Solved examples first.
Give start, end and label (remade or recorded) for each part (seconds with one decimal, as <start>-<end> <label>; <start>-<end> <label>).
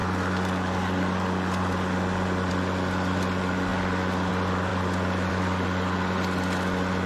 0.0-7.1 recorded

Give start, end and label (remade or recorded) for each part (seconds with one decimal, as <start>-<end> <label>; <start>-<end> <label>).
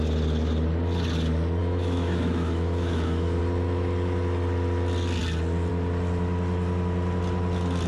0.0-1.6 recorded; 1.6-3.4 remade; 3.4-7.9 recorded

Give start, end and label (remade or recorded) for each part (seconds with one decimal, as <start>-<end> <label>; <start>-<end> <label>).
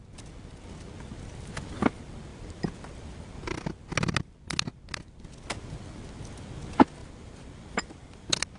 0.0-8.6 recorded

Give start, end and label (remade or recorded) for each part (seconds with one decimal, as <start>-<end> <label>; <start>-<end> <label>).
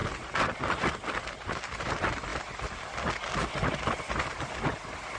0.0-5.2 recorded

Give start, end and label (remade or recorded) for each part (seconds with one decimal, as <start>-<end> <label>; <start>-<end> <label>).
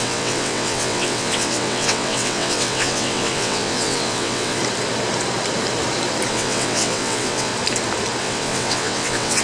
0.0-4.6 remade; 4.6-6.3 recorded; 6.3-7.5 remade; 7.5-8.2 recorded; 8.2-9.4 remade